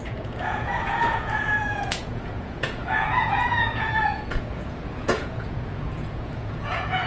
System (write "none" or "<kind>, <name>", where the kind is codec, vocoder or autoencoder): vocoder, Vocos